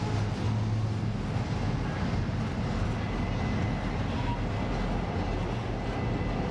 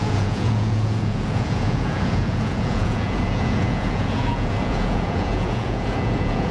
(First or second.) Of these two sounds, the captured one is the first